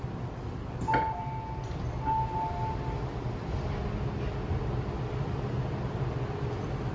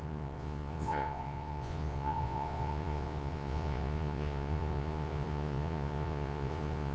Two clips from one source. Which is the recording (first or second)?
first